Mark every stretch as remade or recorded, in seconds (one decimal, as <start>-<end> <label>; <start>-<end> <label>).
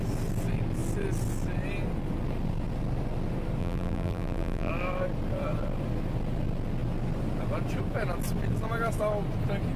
0.0-3.6 recorded; 3.6-4.7 remade; 4.7-9.8 recorded